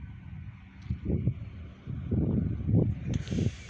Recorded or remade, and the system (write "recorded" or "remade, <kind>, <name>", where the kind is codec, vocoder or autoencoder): recorded